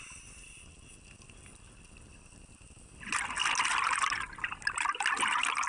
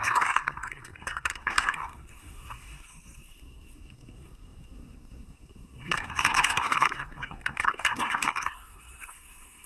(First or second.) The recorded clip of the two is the first